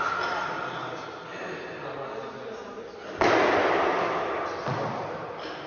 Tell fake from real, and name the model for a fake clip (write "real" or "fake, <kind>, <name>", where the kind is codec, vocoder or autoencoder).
real